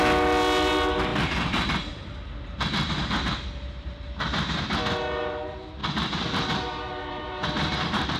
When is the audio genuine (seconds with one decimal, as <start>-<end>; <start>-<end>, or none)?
0.0-1.1; 2.0-5.8